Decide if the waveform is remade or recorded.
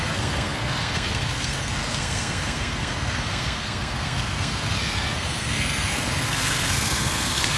remade